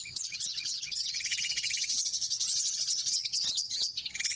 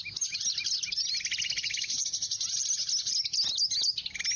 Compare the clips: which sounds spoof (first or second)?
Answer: first